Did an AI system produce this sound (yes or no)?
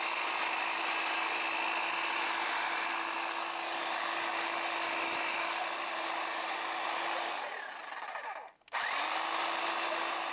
no